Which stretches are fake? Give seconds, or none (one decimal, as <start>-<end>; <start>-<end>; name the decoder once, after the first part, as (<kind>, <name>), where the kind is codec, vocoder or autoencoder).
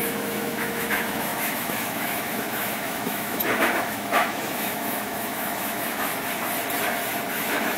0.0-6.1 (autoencoder, DAC-VAE); 7.3-7.8